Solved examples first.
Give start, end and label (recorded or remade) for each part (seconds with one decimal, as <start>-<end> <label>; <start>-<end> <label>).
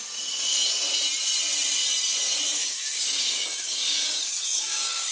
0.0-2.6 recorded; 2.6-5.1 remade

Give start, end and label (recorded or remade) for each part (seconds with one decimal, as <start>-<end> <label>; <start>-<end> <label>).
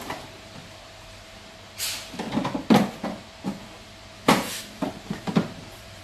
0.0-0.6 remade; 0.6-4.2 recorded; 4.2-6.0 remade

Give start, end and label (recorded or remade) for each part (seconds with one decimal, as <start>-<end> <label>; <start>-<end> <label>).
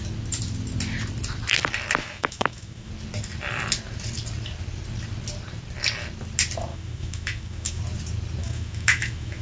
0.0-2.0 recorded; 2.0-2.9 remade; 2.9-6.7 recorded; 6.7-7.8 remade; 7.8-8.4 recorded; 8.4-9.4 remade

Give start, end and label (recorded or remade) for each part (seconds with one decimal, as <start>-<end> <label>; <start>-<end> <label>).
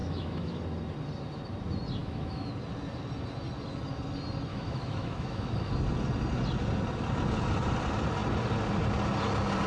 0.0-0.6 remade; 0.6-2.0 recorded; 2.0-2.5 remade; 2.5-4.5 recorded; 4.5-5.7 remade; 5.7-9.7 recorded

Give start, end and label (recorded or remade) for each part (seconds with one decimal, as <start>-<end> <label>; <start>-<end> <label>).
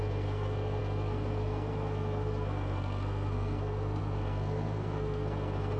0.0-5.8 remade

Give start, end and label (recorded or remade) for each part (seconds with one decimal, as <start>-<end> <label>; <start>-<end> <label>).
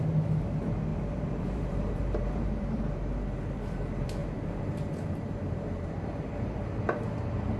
0.0-0.9 recorded; 0.9-3.1 remade; 3.1-4.2 recorded; 4.2-6.3 remade; 6.3-7.6 recorded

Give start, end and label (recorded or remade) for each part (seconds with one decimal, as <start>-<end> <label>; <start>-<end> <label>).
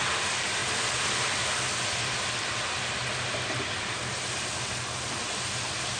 0.0-6.0 recorded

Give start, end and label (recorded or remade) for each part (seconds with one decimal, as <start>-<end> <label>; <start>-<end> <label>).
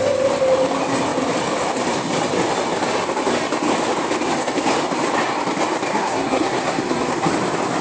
0.0-5.9 recorded; 5.9-7.3 remade; 7.3-7.8 recorded